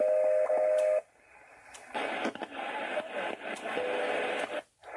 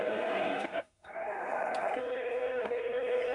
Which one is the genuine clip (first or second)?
first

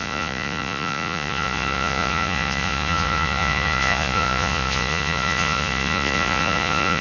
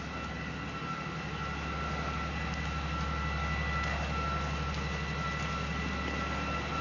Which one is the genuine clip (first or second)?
second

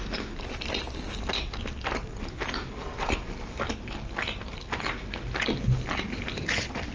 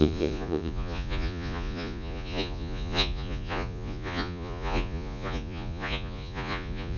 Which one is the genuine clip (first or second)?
first